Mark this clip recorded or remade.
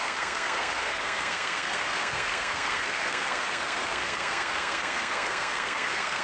remade